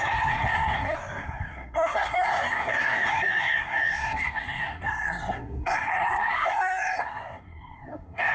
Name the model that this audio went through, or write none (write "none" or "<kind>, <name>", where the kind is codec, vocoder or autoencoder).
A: codec, SNAC